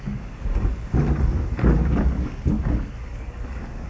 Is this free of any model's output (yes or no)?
no